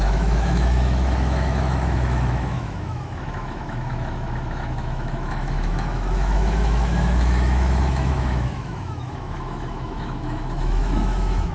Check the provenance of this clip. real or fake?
fake